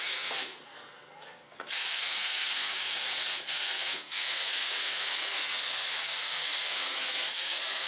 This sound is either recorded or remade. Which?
remade